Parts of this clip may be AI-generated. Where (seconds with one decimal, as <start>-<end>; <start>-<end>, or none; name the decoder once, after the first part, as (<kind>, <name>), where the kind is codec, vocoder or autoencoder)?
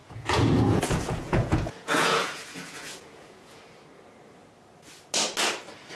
0.0-3.6 (vocoder, Vocos)